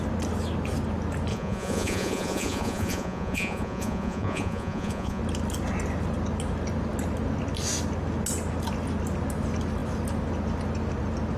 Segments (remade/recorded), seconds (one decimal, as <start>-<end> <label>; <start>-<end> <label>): 0.0-1.3 recorded; 1.3-5.2 remade; 5.2-11.4 recorded